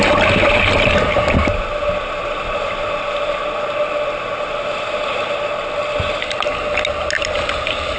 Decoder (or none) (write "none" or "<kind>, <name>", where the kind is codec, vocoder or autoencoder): none